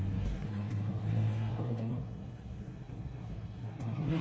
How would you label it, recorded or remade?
remade